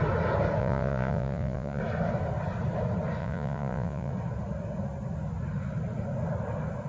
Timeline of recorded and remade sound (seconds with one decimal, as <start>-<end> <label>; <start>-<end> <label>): 0.0-0.6 recorded; 0.6-1.8 remade; 1.8-3.2 recorded; 3.2-4.1 remade; 4.1-6.9 recorded